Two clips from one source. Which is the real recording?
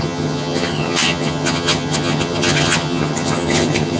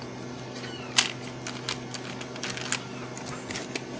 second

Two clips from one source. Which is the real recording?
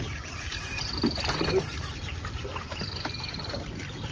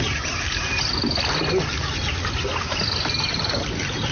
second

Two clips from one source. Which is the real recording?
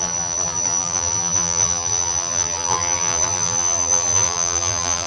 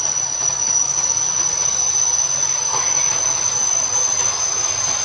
second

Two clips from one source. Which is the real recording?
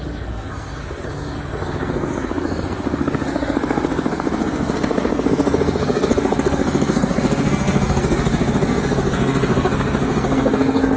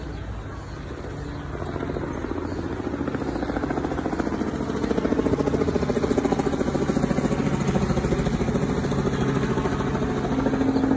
second